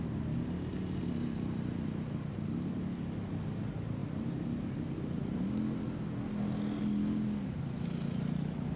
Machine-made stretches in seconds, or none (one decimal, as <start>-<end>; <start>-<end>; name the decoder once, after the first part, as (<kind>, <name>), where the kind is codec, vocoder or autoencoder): none